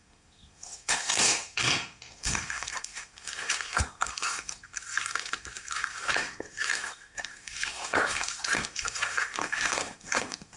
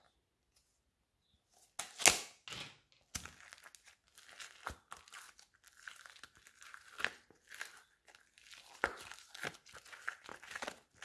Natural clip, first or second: second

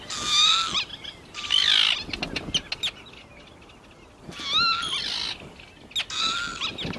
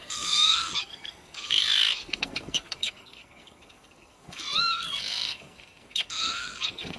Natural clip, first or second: first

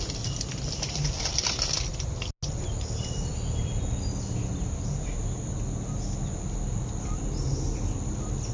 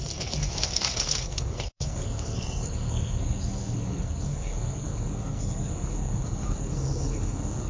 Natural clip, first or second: first